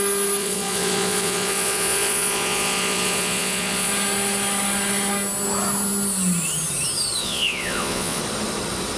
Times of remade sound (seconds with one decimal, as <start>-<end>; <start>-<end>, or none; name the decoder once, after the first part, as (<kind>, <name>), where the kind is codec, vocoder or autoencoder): 0.4-3.9 (vocoder, Vocos); 7.2-8.2